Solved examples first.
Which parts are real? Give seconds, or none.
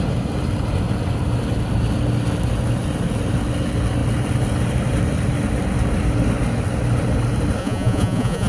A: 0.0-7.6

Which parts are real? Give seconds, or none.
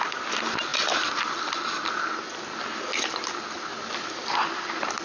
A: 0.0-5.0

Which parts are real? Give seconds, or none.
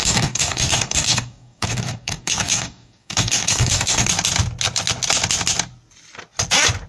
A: 4.1-6.9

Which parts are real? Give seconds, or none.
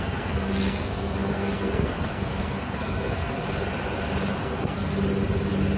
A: 3.4-4.4; 4.9-5.8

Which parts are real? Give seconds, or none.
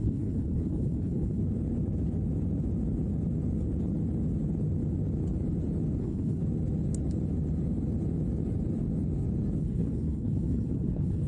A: 1.4-6.0; 6.4-9.6